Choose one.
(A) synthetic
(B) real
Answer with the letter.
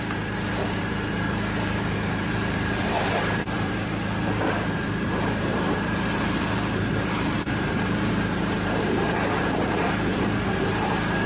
A